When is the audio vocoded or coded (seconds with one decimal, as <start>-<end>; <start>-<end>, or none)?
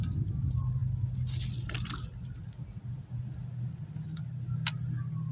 none